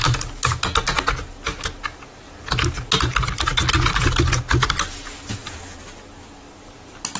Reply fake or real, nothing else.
real